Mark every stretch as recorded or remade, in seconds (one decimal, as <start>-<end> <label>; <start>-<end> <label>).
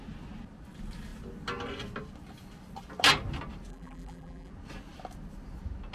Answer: 0.0-3.7 recorded; 3.7-4.5 remade; 4.5-5.9 recorded